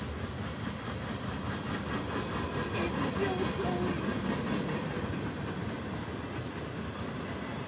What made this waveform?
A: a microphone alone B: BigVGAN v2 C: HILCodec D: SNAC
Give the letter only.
A